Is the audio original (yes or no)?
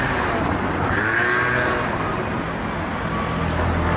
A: yes